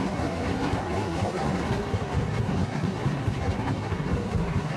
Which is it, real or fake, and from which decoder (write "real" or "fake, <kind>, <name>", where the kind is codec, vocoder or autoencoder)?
fake, codec, SNAC